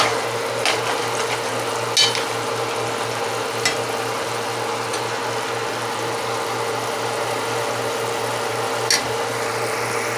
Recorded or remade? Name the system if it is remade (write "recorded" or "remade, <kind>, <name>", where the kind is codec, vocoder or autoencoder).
recorded